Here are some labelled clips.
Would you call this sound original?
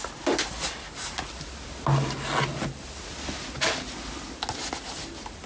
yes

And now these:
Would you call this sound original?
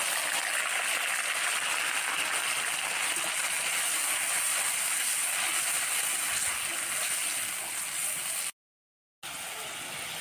yes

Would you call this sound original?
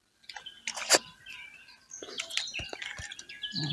yes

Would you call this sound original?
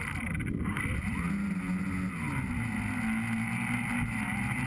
yes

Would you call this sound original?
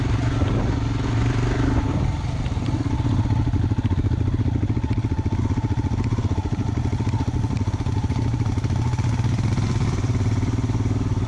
yes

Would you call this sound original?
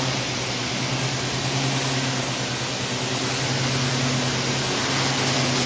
yes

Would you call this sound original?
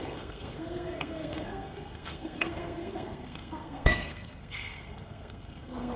no